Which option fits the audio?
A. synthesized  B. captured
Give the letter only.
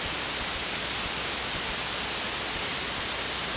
B